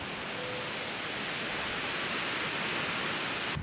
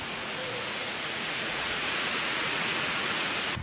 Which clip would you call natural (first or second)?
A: first